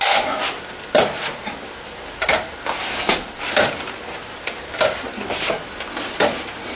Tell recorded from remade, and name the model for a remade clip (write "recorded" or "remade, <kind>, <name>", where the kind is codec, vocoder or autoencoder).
recorded